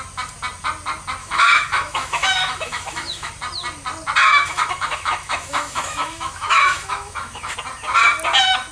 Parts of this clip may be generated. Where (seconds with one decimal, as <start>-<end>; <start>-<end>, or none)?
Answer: 1.2-3.3; 4.2-7.5